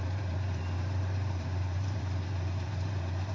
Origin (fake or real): fake